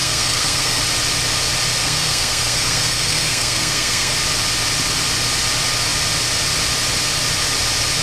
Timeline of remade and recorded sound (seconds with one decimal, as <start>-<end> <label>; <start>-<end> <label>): 0.0-0.8 remade; 0.8-1.8 recorded; 1.8-4.1 remade; 4.1-8.0 recorded